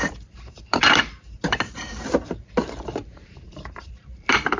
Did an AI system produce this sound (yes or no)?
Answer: yes